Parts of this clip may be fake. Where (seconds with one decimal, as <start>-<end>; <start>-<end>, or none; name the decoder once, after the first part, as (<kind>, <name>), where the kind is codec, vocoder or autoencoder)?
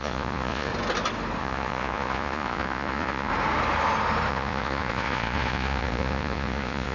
0.0-0.7 (vocoder, Vocos); 1.4-3.3; 4.3-6.9